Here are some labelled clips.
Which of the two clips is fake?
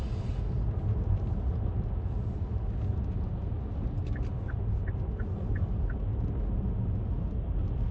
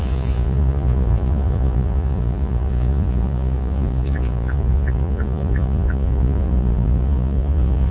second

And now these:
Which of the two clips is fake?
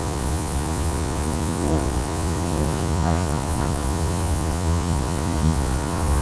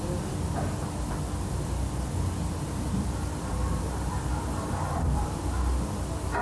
first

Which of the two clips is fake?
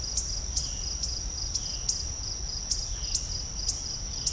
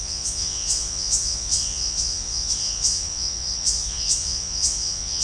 second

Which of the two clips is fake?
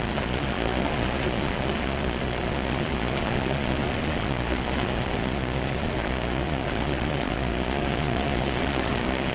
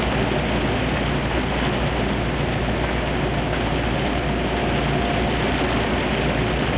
first